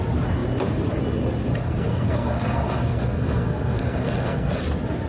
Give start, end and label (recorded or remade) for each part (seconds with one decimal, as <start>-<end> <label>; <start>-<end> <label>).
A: 0.0-1.5 recorded; 1.5-4.6 remade; 4.6-5.1 recorded

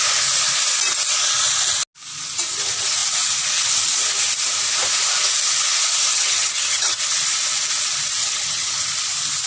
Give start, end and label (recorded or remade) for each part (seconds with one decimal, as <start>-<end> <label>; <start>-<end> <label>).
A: 0.0-6.1 recorded; 6.1-7.0 remade; 7.0-8.2 recorded; 8.2-8.7 remade; 8.7-9.5 recorded

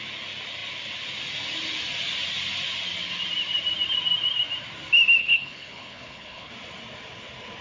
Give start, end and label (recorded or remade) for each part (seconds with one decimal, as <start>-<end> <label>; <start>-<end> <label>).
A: 0.0-5.2 recorded; 5.2-6.5 remade; 6.5-7.6 recorded

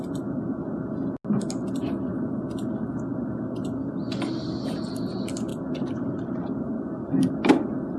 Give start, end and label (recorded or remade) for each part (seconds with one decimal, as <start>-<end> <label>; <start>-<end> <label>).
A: 0.0-8.0 recorded

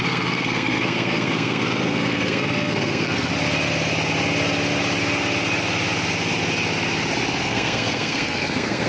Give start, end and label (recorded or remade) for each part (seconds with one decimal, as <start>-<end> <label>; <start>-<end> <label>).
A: 0.0-3.3 remade; 3.3-7.4 recorded; 7.4-8.9 remade

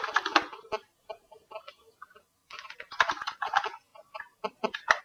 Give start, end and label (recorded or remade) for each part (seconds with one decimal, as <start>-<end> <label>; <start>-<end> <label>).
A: 0.0-2.4 recorded; 2.4-3.4 remade; 3.4-3.9 recorded; 3.9-5.0 remade

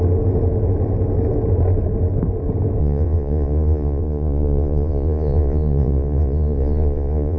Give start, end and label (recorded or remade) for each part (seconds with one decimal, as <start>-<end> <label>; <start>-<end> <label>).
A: 0.0-2.8 recorded; 2.8-7.4 remade

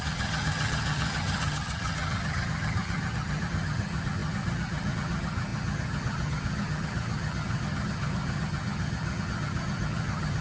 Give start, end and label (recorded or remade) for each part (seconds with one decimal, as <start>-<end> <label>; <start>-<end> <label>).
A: 0.0-10.4 remade